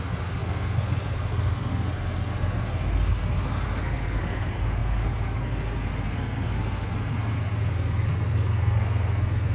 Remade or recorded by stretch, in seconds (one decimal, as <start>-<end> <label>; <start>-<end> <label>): 0.0-9.5 remade